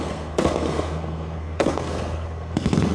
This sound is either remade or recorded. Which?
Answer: remade